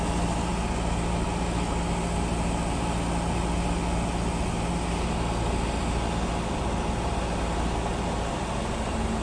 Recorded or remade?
recorded